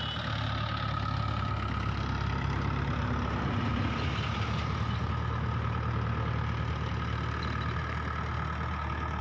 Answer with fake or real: real